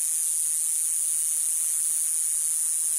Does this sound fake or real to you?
real